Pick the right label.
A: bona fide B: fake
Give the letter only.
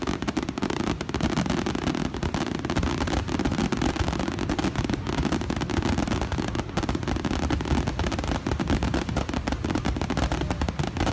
A